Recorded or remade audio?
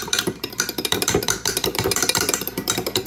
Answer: remade